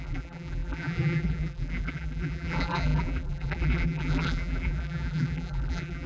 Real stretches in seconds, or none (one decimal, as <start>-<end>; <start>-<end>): none